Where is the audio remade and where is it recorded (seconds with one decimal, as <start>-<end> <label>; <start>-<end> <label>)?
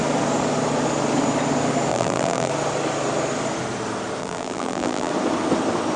0.0-1.9 recorded; 1.9-2.5 remade; 2.5-4.2 recorded; 4.2-5.1 remade; 5.1-6.0 recorded